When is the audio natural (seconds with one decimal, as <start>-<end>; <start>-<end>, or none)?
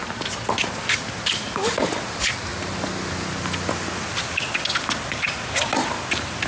0.0-6.5